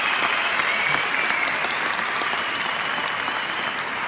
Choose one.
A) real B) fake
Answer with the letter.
A